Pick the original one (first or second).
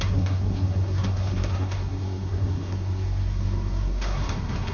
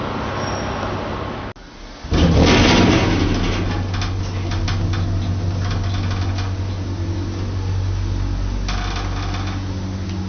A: second